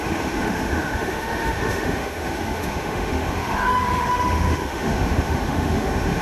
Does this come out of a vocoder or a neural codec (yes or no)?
yes